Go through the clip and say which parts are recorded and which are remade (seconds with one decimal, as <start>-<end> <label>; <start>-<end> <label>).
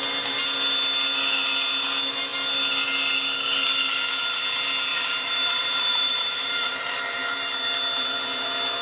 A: 0.0-4.9 recorded; 4.9-7.0 remade; 7.0-8.8 recorded